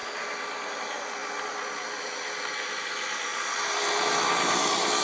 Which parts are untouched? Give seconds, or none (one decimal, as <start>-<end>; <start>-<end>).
0.0-5.0